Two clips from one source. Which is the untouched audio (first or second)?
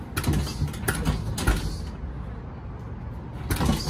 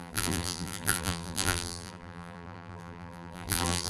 first